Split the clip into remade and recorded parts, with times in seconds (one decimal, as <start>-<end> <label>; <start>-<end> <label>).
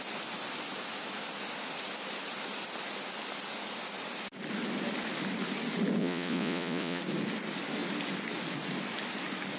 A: 0.0-6.0 recorded; 6.0-7.0 remade; 7.0-9.6 recorded